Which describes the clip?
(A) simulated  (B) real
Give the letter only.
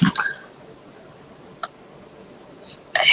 B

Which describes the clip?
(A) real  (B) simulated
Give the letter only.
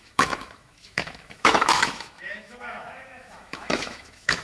B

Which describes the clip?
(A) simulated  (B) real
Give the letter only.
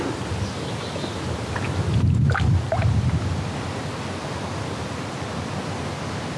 B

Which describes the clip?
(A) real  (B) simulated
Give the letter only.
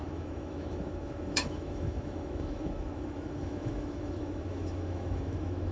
B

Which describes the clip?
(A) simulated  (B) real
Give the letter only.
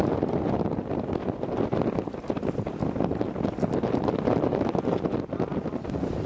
B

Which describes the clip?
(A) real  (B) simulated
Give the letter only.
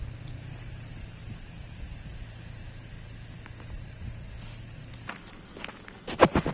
A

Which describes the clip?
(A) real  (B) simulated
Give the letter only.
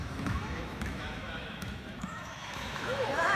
B